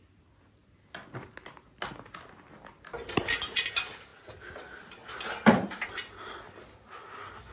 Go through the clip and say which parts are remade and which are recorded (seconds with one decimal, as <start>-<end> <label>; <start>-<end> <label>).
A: 0.0-7.5 recorded